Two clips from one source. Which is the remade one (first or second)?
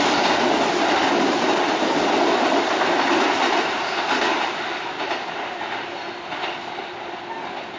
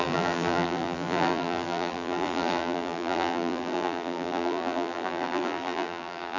second